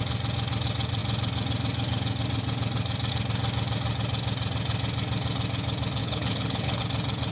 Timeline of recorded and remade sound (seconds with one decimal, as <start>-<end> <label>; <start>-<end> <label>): 0.0-6.0 recorded; 6.0-6.8 remade; 6.8-7.3 recorded